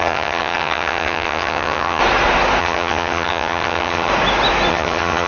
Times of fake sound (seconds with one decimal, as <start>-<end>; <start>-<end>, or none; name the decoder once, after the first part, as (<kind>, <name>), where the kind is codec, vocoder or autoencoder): 0.0-2.0 (vocoder, HiFi-GAN); 2.6-4.1; 4.7-5.3